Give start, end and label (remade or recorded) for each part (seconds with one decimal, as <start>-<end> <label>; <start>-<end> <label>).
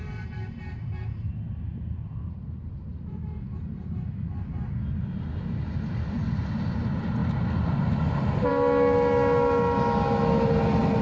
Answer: 0.0-11.0 recorded